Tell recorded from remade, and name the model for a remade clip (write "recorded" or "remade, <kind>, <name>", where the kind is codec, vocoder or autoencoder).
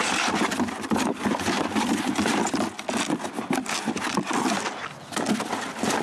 recorded